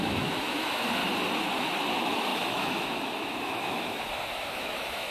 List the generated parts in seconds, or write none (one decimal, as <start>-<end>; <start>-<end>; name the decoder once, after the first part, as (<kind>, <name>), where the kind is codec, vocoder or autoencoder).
0.0-1.0 (autoencoder, DAC-VAE); 1.6-5.1